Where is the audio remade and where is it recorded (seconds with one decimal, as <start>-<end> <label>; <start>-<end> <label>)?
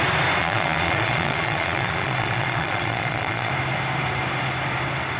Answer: 0.0-0.4 recorded; 0.4-3.5 remade; 3.5-5.2 recorded